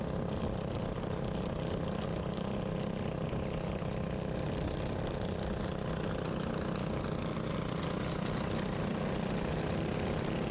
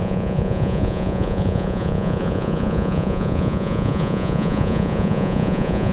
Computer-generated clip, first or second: second